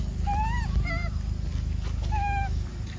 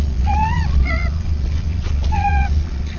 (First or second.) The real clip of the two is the first